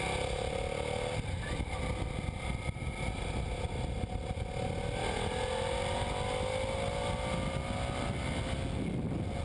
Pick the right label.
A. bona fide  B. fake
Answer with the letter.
A